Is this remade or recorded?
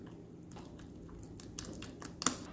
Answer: recorded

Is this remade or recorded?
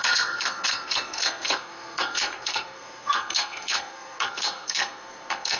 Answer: remade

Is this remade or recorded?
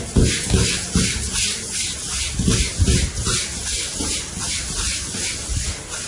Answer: recorded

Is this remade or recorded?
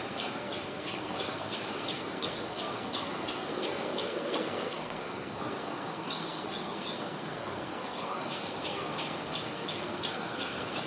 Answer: remade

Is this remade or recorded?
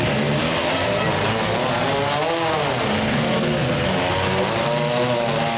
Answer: recorded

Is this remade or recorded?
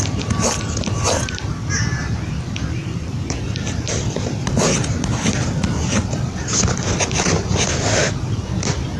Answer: recorded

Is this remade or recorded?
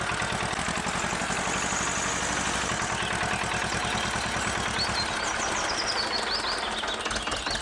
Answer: recorded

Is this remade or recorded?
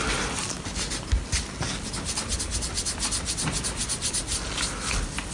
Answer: recorded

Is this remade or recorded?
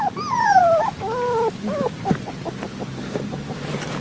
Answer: recorded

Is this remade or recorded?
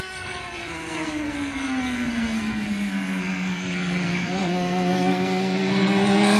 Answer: remade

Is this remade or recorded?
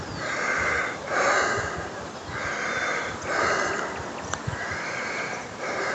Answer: recorded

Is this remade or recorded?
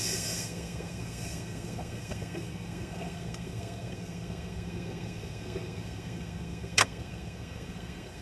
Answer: remade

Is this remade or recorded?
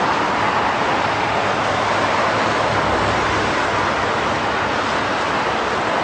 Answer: recorded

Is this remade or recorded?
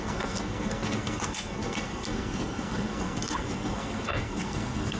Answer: remade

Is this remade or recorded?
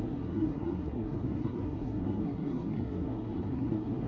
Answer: remade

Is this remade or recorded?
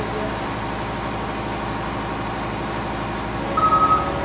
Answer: recorded